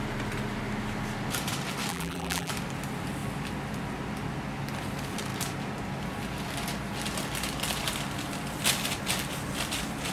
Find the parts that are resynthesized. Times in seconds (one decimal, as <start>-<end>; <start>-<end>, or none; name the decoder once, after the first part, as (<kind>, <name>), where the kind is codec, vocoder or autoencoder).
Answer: 1.9-2.5 (vocoder, BigVGAN v2)